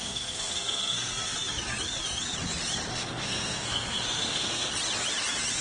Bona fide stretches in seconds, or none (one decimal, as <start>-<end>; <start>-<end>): 1.1-2.9; 4.7-5.6